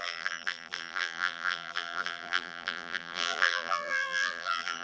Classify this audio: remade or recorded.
remade